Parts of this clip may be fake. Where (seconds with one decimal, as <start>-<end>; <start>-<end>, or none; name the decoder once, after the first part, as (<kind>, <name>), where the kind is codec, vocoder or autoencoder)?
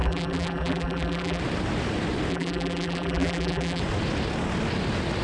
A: 0.0-1.4 (vocoder, BigVGAN v2); 2.3-3.8